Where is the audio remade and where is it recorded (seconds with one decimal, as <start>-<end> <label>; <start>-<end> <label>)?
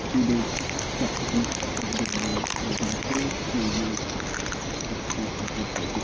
0.0-6.0 recorded